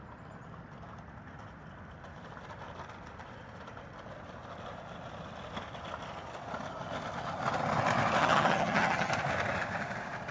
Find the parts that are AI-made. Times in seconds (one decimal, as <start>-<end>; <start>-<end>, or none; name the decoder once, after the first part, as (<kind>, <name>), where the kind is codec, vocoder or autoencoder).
8.2-9.1 (vocoder, HiFi-GAN)